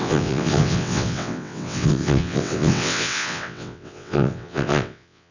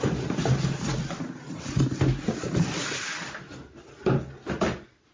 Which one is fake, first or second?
first